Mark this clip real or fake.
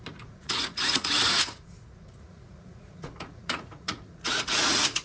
fake